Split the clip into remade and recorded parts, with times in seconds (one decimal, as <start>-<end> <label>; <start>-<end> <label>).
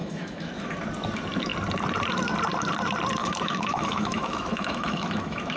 0.0-0.7 remade; 0.7-3.2 recorded; 3.2-5.6 remade